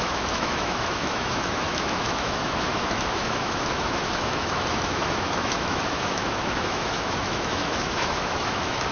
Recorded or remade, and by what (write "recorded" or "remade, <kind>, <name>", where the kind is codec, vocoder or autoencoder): remade, autoencoder, DAC-VAE